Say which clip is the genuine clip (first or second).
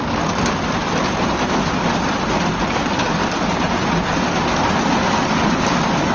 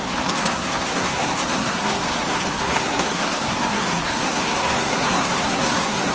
first